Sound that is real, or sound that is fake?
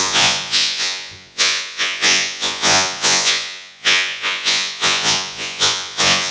fake